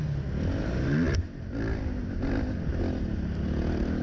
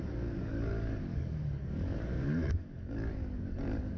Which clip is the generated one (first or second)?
second